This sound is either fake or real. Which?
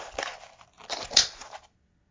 real